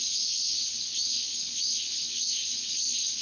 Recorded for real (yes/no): no